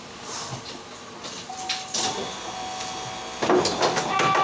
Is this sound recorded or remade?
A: recorded